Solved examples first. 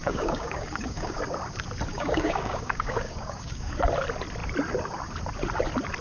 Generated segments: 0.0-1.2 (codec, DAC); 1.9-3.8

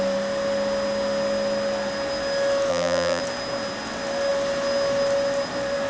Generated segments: 2.7-3.2 (vocoder, BigVGAN v2)

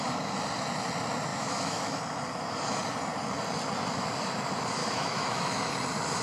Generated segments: 1.3-2.0 (autoencoder, DAC-VAE); 4.8-5.7

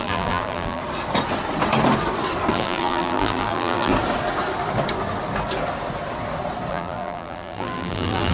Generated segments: 0.0-0.8 (vocoder, BigVGAN v2); 2.5-3.9; 6.7-8.3